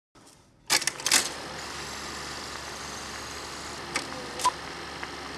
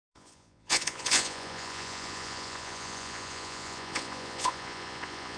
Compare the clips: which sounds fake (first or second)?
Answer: second